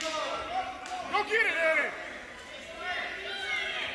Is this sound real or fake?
real